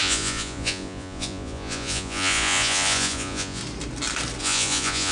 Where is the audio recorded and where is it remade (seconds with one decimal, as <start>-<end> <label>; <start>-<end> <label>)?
0.0-3.6 remade; 3.6-4.4 recorded; 4.4-5.1 remade